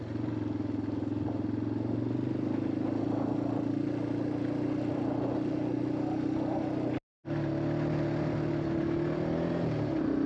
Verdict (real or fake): real